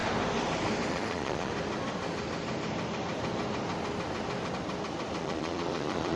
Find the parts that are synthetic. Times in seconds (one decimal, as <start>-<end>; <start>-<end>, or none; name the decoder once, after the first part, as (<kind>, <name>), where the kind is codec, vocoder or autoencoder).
0.9-1.5 (vocoder, Vocos); 5.2-6.2